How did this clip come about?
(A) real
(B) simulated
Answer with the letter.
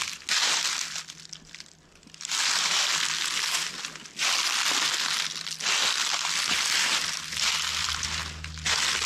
A